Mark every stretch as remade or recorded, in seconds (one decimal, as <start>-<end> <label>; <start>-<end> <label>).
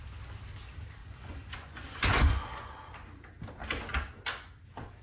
0.0-1.0 recorded; 1.0-2.9 remade; 2.9-5.0 recorded